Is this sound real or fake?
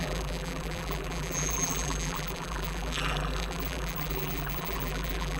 fake